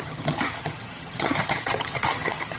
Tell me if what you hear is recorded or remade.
remade